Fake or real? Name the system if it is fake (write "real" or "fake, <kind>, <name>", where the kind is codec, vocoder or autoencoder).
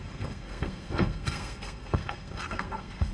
fake, codec, SNAC